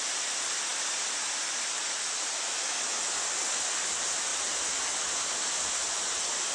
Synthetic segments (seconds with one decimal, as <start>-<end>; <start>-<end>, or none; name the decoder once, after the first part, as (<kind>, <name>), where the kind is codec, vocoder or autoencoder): 0.0-0.7 (vocoder, BigVGAN v2); 3.9-6.5